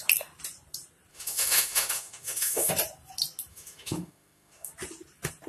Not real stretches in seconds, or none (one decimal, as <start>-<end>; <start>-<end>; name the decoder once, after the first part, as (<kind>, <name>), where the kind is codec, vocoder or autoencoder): 1.1-2.7 (autoencoder, DAC-VAE); 3.5-4.7

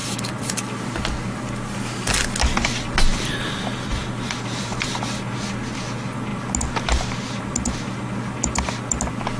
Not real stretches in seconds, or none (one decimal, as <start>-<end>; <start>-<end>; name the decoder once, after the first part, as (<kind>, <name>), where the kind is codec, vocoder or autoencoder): 0.0-0.5 (vocoder, BigVGAN v2); 3.1-4.7

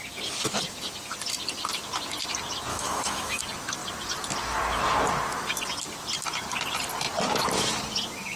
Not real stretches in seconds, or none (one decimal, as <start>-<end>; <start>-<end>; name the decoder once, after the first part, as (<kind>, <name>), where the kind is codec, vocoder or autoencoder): 2.7-3.4 (autoencoder, DAC-VAE)

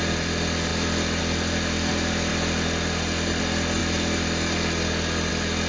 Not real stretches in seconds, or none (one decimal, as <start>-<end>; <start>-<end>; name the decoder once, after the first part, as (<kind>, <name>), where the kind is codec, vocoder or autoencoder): none